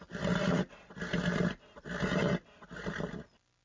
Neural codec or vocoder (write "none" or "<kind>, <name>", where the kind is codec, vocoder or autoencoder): none